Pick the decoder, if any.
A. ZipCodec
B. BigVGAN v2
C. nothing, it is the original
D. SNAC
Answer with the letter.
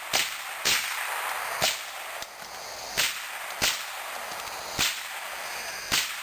C